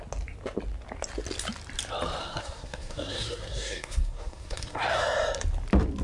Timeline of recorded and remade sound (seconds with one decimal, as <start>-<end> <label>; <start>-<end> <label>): 0.0-2.2 recorded; 2.2-5.0 remade; 5.0-6.0 recorded